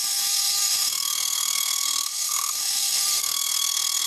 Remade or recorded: remade